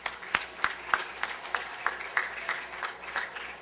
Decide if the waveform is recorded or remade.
recorded